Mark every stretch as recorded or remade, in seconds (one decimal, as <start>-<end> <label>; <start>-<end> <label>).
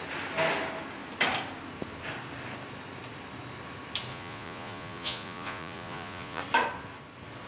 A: 0.0-4.1 recorded; 4.1-6.4 remade; 6.4-7.5 recorded